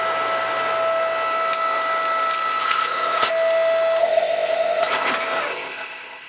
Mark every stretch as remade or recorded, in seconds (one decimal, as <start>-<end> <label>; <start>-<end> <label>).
0.0-2.6 recorded; 2.6-3.3 remade; 3.3-4.0 recorded; 4.0-5.1 remade; 5.1-5.5 recorded; 5.5-6.3 remade